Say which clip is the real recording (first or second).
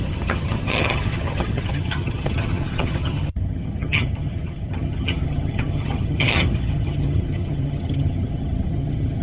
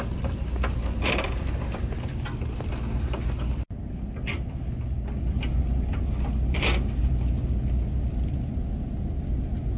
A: second